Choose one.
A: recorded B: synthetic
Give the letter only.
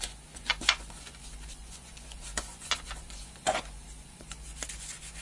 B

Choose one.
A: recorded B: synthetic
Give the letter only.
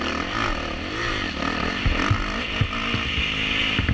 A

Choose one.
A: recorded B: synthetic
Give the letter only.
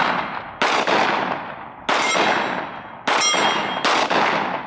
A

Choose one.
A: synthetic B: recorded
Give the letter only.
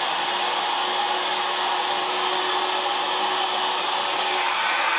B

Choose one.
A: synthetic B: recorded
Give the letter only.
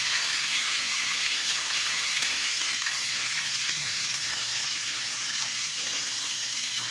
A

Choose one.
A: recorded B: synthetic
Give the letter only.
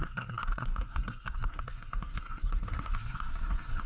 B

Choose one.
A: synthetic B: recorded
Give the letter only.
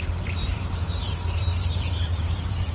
A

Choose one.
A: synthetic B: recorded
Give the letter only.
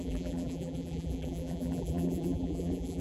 A